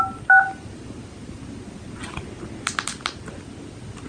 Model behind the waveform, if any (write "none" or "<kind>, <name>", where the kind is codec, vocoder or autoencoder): none